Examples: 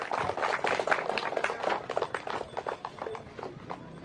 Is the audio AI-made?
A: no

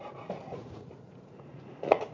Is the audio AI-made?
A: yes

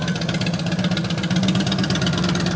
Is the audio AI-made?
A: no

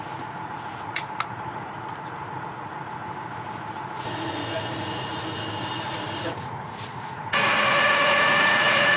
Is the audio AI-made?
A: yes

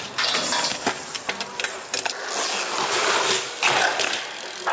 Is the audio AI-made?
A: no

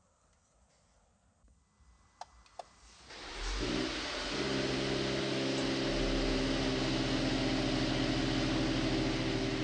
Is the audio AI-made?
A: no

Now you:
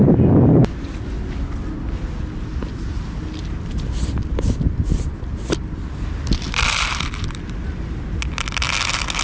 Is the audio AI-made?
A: no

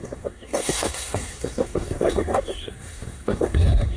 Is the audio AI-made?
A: yes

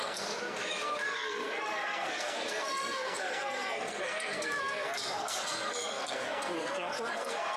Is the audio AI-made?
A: yes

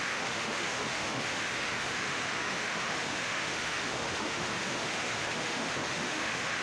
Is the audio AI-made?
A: yes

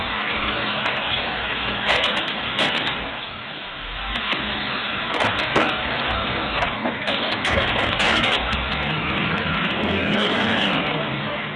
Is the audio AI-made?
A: yes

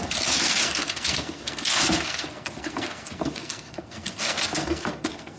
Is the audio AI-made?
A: yes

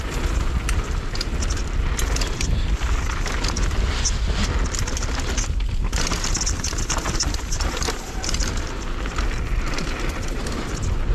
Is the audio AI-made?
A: no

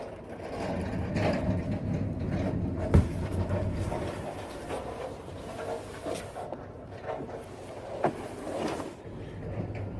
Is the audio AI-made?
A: no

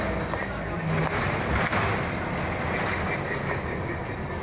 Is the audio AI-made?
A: no